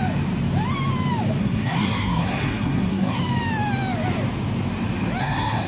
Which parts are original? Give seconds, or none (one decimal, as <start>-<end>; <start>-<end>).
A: 0.0-1.4; 3.2-5.2